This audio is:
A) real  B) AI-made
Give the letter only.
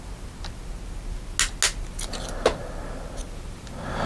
A